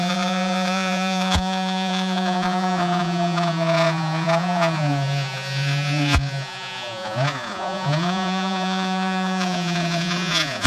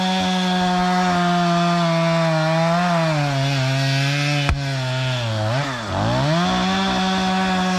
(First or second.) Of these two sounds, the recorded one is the second